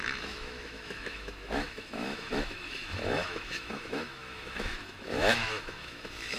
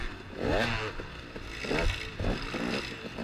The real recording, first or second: second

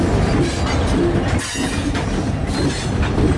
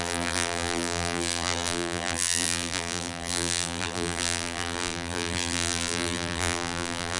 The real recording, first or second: first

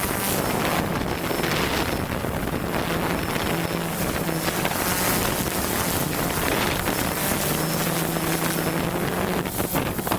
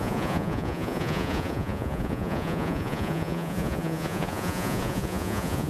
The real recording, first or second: first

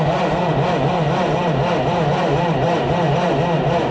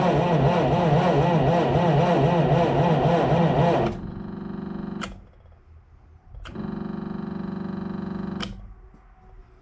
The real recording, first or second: second